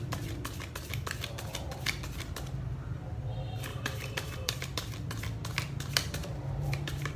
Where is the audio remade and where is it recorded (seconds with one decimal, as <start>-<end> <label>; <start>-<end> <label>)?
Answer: 0.0-3.7 recorded; 3.7-4.5 remade; 4.5-6.2 recorded; 6.2-7.2 remade